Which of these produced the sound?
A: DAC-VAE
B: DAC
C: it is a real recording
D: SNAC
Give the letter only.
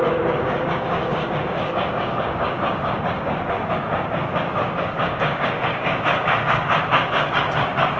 B